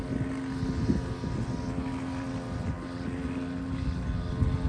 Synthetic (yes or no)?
no